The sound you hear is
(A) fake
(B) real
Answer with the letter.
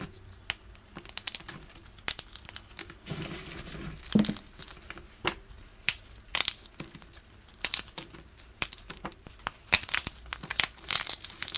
B